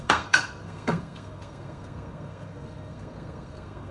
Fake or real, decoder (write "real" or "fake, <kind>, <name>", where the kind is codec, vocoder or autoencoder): fake, codec, SNAC